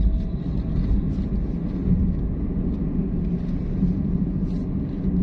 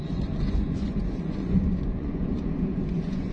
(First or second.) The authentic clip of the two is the first